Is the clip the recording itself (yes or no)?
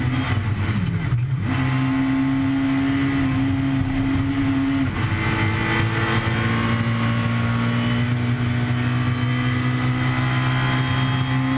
yes